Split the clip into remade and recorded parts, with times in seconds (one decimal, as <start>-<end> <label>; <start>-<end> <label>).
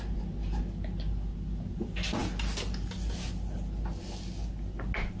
0.0-5.2 recorded